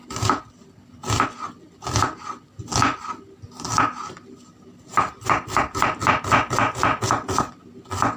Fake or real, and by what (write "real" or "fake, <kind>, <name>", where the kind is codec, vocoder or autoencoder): real